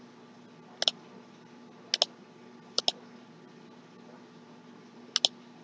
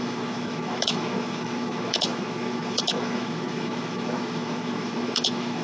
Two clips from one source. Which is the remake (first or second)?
second